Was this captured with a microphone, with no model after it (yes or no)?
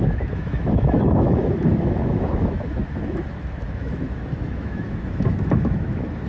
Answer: no